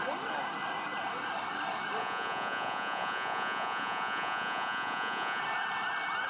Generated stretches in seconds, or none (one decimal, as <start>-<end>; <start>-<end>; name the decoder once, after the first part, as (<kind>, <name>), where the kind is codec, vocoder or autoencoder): 2.0-5.4 (vocoder, Vocos)